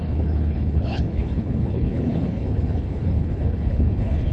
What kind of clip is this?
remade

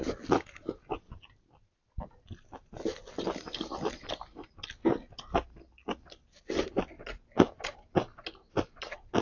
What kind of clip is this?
recorded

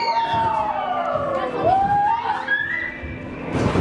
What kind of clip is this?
recorded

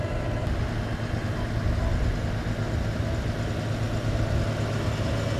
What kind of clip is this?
recorded